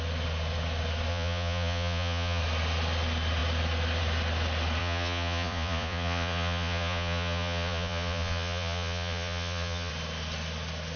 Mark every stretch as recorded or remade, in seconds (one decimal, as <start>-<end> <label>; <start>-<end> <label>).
0.0-1.1 recorded; 1.1-2.4 remade; 2.4-4.8 recorded; 4.8-9.9 remade; 9.9-11.0 recorded